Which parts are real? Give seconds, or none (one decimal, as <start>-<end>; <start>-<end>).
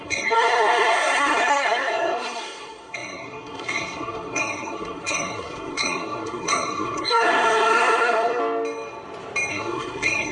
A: 8.4-9.5